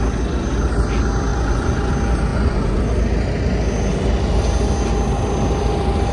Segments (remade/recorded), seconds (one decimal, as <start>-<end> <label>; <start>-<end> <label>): 0.0-1.3 recorded; 1.3-1.9 remade; 1.9-2.3 recorded; 2.3-2.8 remade; 2.8-6.1 recorded